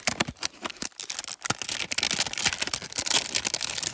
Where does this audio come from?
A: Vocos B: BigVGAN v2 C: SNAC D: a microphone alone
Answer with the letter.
D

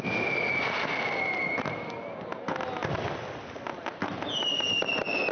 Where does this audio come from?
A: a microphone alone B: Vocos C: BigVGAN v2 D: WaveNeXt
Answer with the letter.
A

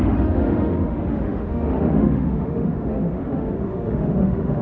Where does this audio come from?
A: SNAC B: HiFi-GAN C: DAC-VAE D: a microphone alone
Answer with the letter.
C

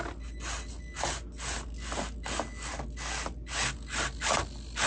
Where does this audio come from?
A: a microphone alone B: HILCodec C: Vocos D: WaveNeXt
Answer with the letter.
A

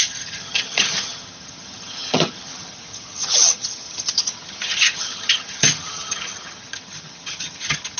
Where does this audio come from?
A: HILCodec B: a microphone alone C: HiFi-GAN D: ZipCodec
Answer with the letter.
C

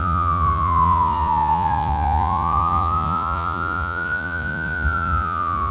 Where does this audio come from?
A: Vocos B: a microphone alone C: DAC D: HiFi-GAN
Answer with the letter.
A